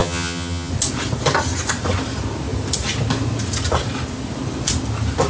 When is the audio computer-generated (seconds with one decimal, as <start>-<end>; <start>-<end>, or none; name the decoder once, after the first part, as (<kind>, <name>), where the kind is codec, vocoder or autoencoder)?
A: 0.0-0.7 (vocoder, HiFi-GAN)